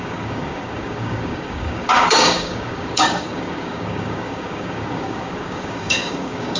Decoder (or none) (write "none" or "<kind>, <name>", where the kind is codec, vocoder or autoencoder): codec, DAC